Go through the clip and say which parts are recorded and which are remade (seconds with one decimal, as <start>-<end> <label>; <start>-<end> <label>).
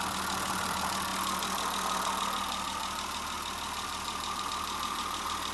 0.0-5.5 recorded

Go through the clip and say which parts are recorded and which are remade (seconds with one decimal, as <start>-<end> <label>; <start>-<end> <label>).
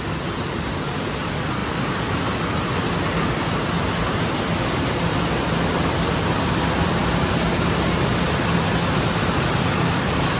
0.0-10.4 recorded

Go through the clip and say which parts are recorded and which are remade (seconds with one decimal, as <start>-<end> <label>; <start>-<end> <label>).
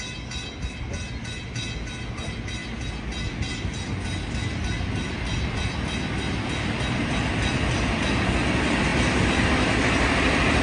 0.0-10.6 recorded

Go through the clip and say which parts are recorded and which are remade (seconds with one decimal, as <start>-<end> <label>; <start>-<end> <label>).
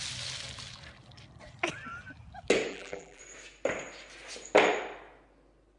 0.0-2.7 recorded; 2.7-3.2 remade; 3.2-5.8 recorded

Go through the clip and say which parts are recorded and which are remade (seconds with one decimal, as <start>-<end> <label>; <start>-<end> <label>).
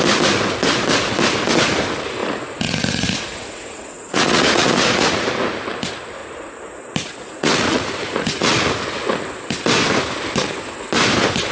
0.0-2.2 recorded; 2.2-5.3 remade; 5.3-6.2 recorded; 6.2-8.7 remade; 8.7-11.5 recorded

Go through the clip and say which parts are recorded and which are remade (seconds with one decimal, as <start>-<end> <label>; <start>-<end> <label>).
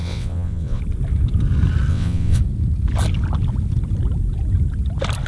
0.0-0.8 remade; 0.8-1.9 recorded; 1.9-2.4 remade; 2.4-5.3 recorded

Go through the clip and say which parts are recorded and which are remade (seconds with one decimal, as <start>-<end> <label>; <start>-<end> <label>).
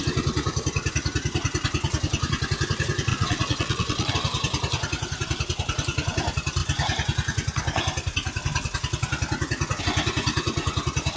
0.0-3.1 recorded; 3.1-4.1 remade; 4.1-11.2 recorded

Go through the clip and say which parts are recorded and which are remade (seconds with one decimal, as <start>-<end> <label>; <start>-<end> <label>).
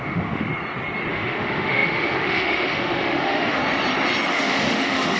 0.0-0.5 remade; 0.5-1.1 recorded; 1.1-3.6 remade; 3.6-4.3 recorded; 4.3-5.2 remade